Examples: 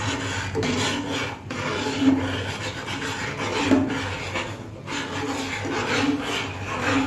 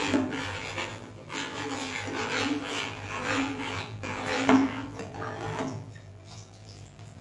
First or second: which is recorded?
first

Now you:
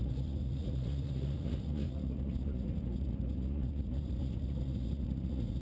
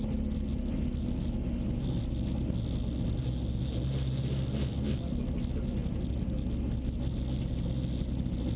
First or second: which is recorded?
second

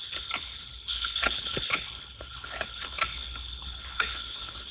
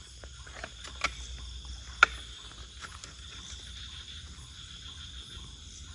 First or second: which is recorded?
second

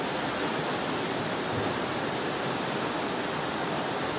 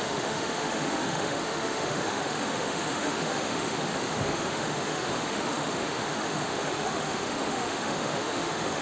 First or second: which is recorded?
first